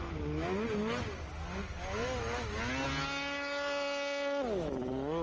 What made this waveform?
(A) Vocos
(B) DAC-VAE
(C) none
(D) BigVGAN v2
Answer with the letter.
C